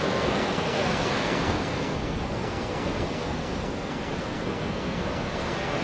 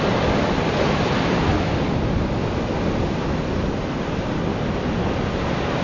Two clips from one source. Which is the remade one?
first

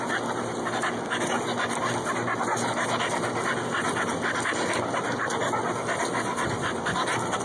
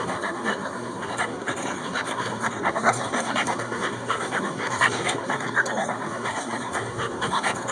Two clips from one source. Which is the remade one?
second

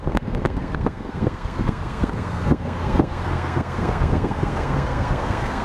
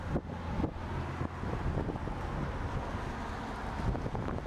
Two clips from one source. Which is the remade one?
first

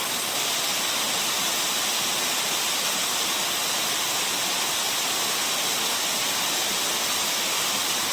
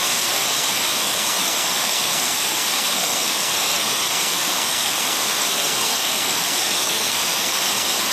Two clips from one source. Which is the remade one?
second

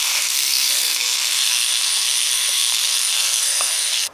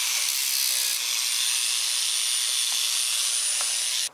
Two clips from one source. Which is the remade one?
first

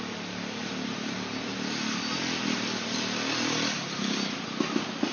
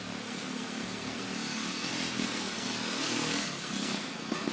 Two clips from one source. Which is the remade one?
second